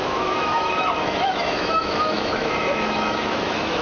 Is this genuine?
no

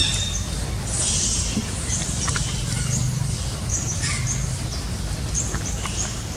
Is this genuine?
yes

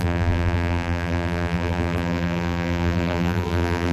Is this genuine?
no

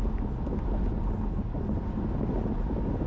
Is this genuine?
yes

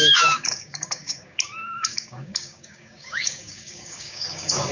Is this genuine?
no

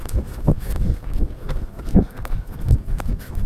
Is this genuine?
no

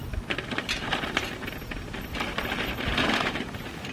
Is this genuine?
yes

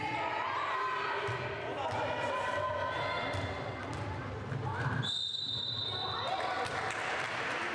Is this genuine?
yes